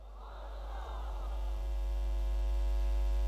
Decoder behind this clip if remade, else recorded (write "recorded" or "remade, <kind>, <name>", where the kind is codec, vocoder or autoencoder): remade, vocoder, BigVGAN v2